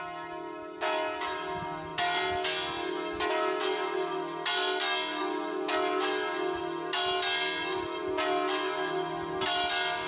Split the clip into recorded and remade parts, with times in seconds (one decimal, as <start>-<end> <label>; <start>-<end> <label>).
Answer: 0.0-10.1 recorded

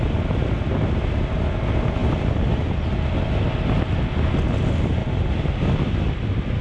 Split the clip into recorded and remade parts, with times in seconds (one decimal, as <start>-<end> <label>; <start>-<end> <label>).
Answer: 0.0-2.0 recorded; 2.0-2.7 remade; 2.7-5.0 recorded; 5.0-5.8 remade; 5.8-6.6 recorded

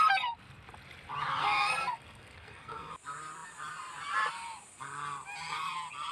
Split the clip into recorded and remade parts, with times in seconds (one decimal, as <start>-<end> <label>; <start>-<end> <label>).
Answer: 0.0-1.4 recorded; 1.4-2.9 remade; 2.9-6.1 recorded

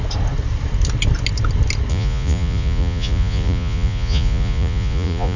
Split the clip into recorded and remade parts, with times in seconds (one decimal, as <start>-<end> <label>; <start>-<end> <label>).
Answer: 0.0-1.9 recorded; 1.9-5.4 remade

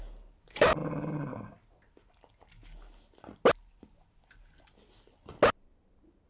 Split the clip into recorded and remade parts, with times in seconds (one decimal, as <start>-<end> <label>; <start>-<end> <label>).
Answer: 0.0-6.3 recorded

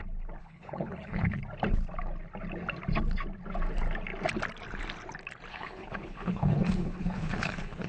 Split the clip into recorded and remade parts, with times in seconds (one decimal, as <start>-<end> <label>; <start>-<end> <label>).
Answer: 0.0-0.4 recorded; 0.4-1.4 remade; 1.4-5.5 recorded; 5.5-7.9 remade

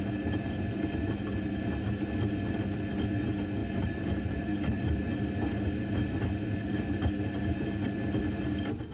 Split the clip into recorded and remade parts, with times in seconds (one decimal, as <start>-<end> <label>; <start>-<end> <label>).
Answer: 0.0-3.6 recorded; 3.6-4.8 remade; 4.8-8.9 recorded